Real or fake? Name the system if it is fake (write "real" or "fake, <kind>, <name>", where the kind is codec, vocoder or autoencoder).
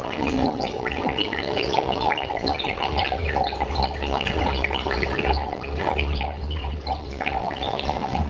fake, vocoder, WaveNeXt